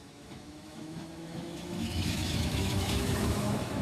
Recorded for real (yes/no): no